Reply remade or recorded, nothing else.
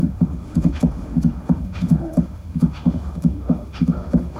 remade